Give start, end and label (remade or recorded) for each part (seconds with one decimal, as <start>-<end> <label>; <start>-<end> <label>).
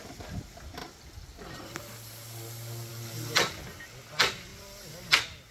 0.0-0.8 recorded; 0.8-1.8 remade; 1.8-4.5 recorded; 4.5-5.1 remade; 5.1-5.5 recorded